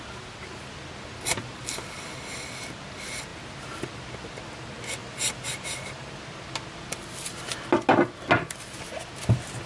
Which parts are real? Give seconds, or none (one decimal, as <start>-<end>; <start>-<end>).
0.0-5.0; 6.1-9.7